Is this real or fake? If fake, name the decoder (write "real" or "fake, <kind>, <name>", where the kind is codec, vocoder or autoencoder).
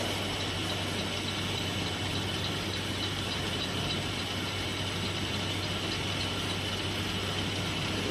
real